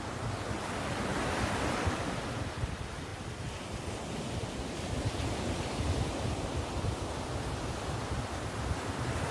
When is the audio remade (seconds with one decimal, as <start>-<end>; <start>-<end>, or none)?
1.1-2.4; 3.1-8.2